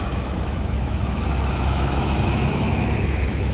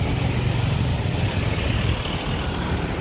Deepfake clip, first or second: first